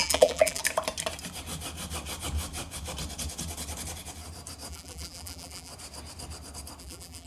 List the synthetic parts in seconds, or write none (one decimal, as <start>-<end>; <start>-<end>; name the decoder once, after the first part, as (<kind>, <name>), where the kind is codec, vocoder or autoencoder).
0.0-0.6 (vocoder, BigVGAN v2); 4.7-5.7; 6.8-7.3